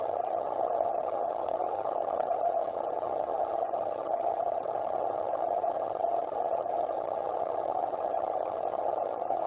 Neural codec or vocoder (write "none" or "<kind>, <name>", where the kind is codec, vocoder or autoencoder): vocoder, HiFi-GAN